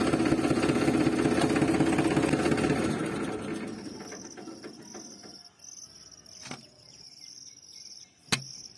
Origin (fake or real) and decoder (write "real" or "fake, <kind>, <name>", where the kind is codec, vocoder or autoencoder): real